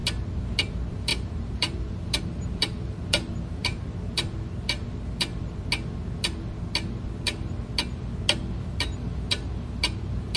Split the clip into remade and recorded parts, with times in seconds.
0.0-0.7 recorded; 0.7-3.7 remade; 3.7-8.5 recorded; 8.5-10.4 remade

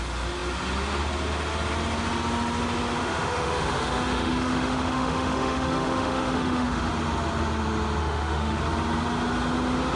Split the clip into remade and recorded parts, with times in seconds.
0.0-3.0 recorded; 3.0-6.9 remade; 6.9-8.0 recorded; 8.0-8.6 remade; 8.6-10.0 recorded

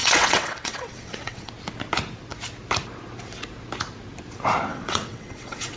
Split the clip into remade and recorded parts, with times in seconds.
0.0-1.5 remade; 1.5-4.7 recorded; 4.7-5.8 remade

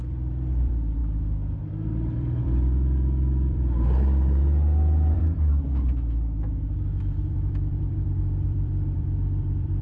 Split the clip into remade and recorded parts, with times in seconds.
0.0-5.5 remade; 5.5-6.8 recorded; 6.8-9.8 remade

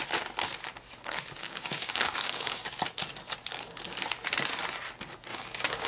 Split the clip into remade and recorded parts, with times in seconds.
0.0-1.4 recorded; 1.4-2.8 remade; 2.8-5.3 recorded; 5.3-5.9 remade

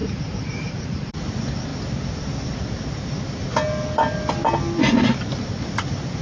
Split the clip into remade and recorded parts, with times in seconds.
0.0-1.1 remade; 1.1-6.2 recorded